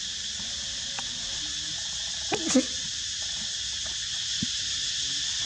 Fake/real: real